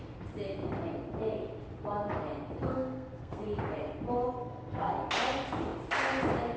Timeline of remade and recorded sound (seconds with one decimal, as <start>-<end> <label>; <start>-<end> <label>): 0.0-2.7 recorded; 2.7-3.4 remade; 3.4-4.4 recorded; 4.4-4.9 remade; 4.9-6.6 recorded